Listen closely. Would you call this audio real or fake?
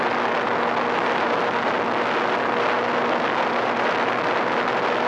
real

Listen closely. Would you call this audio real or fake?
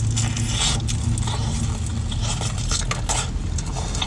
real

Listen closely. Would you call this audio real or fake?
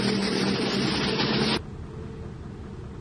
real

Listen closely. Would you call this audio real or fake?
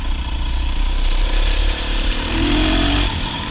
fake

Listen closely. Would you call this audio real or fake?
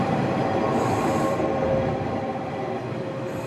fake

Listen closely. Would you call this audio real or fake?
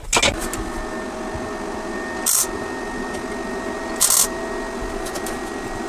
real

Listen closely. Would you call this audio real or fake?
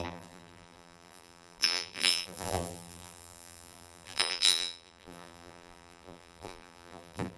fake